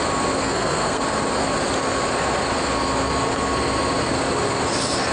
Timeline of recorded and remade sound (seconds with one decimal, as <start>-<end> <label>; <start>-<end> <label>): 0.0-0.4 recorded; 0.4-1.0 remade; 1.0-5.1 recorded